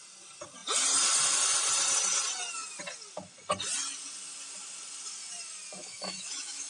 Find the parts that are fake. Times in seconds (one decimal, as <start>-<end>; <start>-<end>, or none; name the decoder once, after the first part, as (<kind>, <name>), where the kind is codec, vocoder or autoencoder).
5.8-6.7 (autoencoder, DAC-VAE)